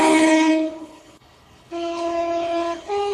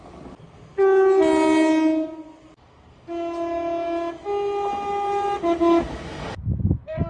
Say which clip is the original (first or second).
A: second